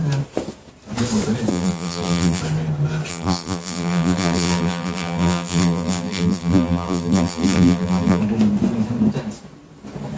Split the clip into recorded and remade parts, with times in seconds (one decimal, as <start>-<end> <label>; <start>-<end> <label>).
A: 0.0-1.5 recorded; 1.5-2.4 remade; 2.4-3.1 recorded; 3.1-8.2 remade; 8.2-10.2 recorded